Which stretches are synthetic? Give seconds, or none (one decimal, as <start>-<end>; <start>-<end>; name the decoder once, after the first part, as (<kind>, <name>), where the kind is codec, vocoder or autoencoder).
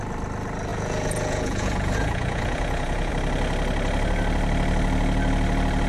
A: 0.7-3.1 (vocoder, Vocos)